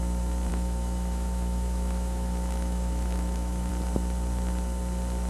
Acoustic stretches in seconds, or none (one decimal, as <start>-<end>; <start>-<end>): 0.0-0.5; 3.7-5.3